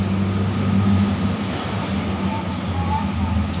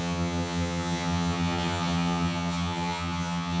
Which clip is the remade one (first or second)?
second